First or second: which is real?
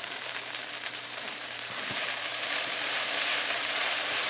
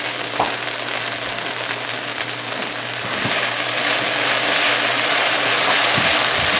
second